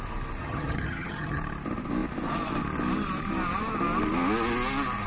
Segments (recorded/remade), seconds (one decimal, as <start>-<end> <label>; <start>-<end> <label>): 0.0-0.4 recorded; 0.4-1.4 remade; 1.4-5.1 recorded

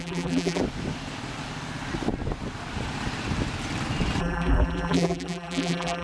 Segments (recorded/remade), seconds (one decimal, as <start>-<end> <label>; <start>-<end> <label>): 0.0-0.6 remade; 0.6-4.2 recorded; 4.2-6.0 remade

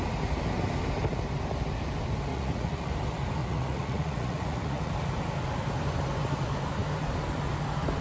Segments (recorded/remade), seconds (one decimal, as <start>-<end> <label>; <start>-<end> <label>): 0.0-2.3 recorded; 2.3-2.9 remade; 2.9-3.4 recorded; 3.4-4.9 remade; 4.9-8.0 recorded

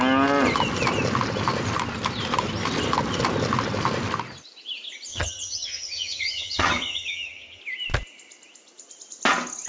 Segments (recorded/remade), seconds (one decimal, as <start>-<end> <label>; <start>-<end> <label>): 0.0-5.1 recorded; 5.1-7.6 remade; 7.6-9.7 recorded

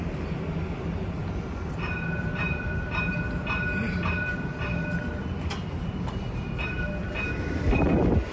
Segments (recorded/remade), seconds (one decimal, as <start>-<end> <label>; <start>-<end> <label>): 0.0-8.3 recorded

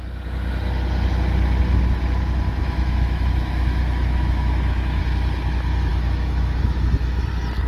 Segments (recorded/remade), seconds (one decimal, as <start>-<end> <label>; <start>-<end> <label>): 0.0-2.6 recorded; 2.6-5.0 remade; 5.0-5.9 recorded; 5.9-7.3 remade; 7.3-7.7 recorded